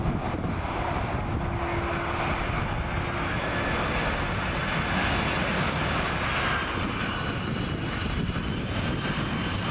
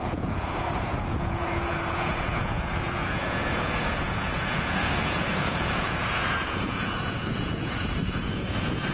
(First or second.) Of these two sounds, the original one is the first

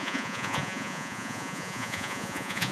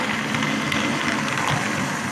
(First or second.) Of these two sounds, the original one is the second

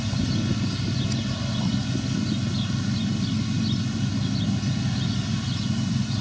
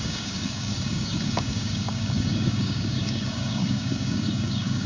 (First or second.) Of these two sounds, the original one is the first